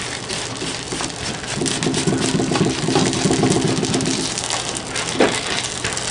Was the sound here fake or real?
real